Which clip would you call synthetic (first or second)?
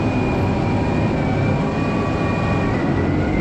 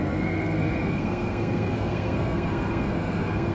second